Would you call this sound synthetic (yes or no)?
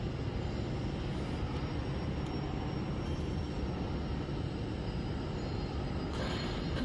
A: no